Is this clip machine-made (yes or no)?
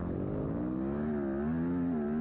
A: no